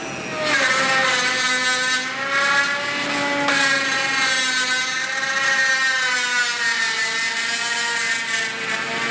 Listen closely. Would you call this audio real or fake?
real